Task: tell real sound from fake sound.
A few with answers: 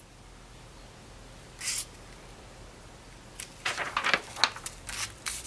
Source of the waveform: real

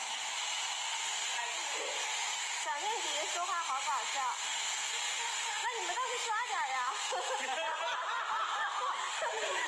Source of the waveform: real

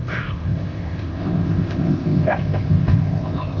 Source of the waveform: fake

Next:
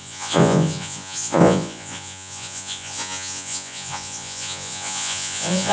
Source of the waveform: fake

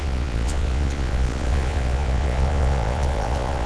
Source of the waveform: fake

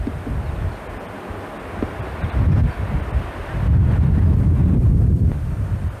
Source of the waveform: real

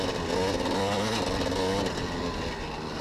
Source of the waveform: real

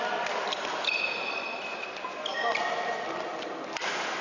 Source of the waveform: real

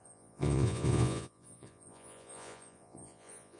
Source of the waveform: fake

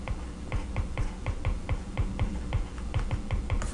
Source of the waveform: real